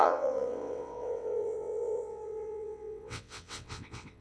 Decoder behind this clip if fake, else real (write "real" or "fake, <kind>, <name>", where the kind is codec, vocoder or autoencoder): fake, vocoder, WaveNeXt